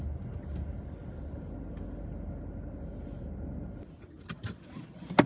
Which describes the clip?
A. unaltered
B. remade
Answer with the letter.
A